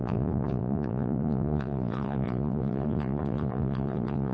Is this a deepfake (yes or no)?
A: yes